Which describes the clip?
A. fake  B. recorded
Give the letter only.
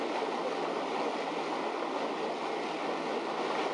B